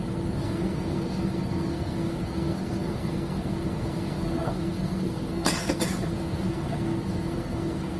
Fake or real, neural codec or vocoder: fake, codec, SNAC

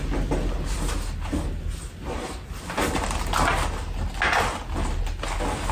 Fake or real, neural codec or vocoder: real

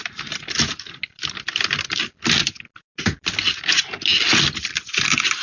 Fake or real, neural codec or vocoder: real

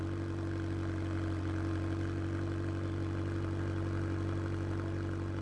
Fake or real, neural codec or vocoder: real